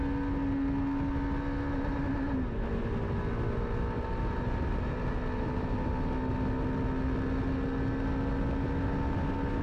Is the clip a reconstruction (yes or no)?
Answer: no